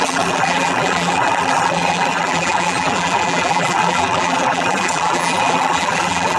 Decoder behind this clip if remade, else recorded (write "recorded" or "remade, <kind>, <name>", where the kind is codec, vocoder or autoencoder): remade, vocoder, BigVGAN v2